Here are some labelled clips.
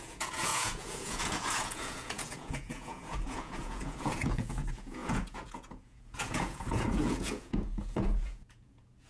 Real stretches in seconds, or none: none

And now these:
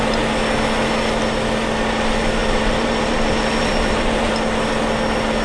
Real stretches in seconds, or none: 0.0-2.4; 4.3-5.4